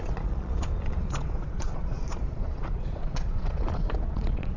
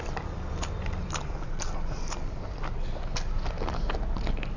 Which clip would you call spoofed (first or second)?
first